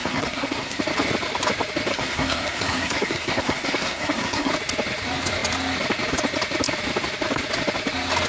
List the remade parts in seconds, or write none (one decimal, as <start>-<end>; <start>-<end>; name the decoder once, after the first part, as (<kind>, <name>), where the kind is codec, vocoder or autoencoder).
0.0-0.8 (codec, SNAC); 1.9-4.5